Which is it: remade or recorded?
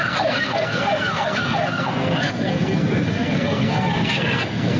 remade